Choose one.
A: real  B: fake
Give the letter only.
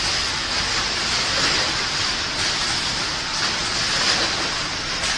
A